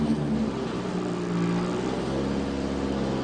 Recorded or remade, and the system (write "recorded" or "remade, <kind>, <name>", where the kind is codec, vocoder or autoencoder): recorded